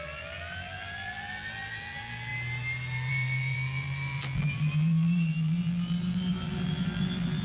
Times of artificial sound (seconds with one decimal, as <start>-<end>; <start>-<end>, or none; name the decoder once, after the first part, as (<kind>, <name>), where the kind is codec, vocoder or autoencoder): 0.0-2.3 (vocoder, BigVGAN v2); 3.1-7.4